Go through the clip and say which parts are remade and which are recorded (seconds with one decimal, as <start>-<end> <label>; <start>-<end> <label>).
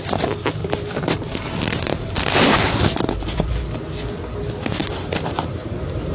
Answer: 0.0-0.6 recorded; 0.6-3.6 remade; 3.6-4.8 recorded; 4.8-6.1 remade